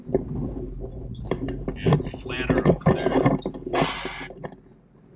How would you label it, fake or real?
real